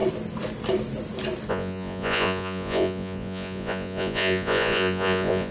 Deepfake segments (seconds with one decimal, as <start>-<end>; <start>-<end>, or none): 1.5-5.5